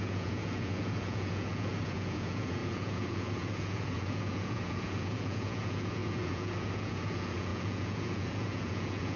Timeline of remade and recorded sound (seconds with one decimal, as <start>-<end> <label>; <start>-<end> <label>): 0.0-9.2 remade